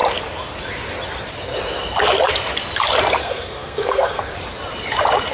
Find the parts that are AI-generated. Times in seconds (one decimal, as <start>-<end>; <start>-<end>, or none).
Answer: 3.2-4.3